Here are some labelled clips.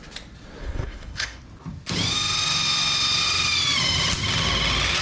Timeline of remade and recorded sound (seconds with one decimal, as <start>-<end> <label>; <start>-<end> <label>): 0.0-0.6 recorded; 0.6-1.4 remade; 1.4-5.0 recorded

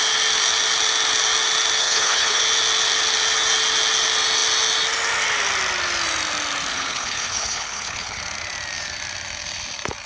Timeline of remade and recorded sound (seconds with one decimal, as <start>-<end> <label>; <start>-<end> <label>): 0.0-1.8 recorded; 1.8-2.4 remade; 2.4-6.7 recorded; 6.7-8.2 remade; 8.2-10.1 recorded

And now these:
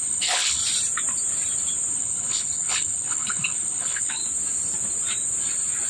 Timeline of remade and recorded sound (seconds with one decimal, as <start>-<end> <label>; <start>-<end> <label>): 0.0-0.6 remade; 0.6-1.9 recorded; 1.9-4.2 remade; 4.2-5.9 recorded